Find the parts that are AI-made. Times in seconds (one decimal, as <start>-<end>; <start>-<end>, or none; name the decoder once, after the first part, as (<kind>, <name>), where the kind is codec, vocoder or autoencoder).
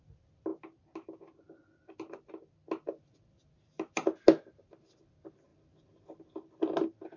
none